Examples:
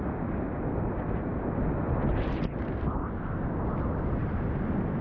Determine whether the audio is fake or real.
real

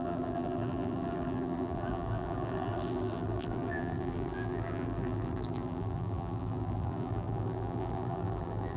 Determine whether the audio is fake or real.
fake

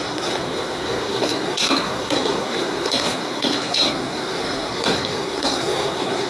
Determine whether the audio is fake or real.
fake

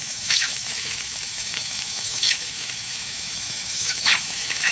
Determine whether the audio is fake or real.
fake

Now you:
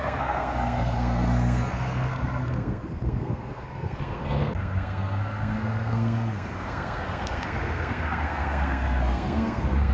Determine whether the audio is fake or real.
fake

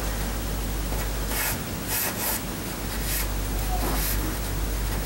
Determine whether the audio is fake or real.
real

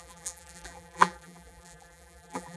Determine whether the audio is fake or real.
fake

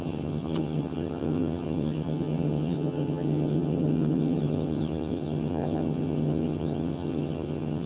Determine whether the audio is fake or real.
fake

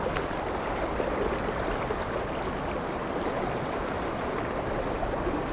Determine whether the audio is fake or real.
real